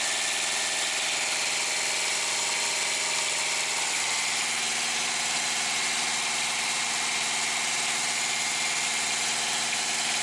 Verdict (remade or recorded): recorded